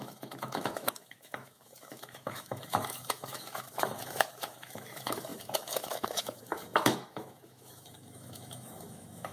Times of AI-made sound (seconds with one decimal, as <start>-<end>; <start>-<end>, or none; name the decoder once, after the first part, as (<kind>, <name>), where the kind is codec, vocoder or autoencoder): 0.0-9.3 (autoencoder, DAC-VAE)